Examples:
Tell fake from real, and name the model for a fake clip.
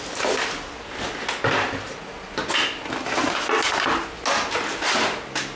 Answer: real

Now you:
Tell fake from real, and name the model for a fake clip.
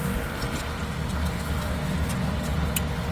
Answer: real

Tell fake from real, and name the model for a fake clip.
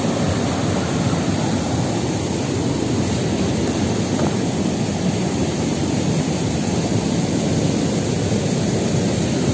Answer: real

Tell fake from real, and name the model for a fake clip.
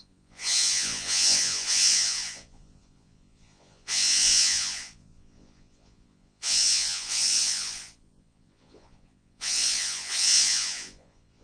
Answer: fake, vocoder, Vocos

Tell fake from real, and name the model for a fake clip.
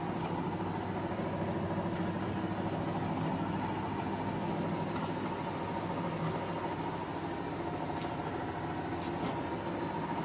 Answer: real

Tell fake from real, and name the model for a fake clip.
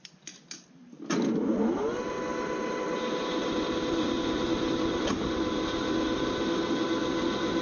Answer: real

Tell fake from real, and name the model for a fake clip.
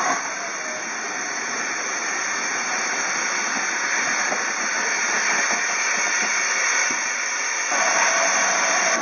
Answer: real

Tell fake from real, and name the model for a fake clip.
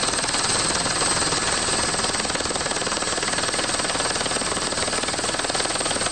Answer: real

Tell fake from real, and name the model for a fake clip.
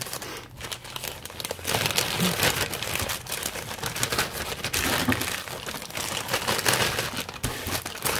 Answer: real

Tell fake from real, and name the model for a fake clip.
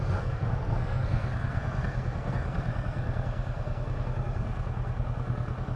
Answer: fake, codec, SNAC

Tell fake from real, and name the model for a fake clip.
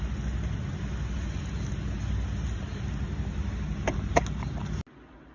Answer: real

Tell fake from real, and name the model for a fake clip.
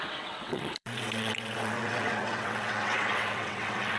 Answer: fake, vocoder, WaveNeXt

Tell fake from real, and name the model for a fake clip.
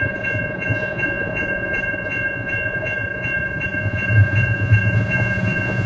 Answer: fake, vocoder, Vocos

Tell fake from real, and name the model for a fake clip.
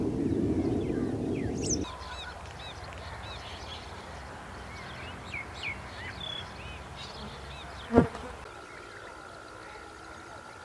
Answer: real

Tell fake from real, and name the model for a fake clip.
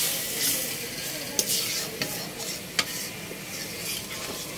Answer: real